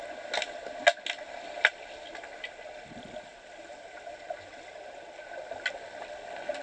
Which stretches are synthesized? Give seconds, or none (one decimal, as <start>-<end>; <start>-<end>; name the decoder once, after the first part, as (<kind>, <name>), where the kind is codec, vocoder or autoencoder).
none